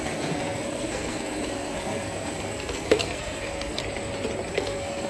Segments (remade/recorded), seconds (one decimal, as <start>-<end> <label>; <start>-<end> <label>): 0.0-3.8 remade; 3.8-4.5 recorded; 4.5-5.1 remade